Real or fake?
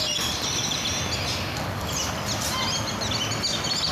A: real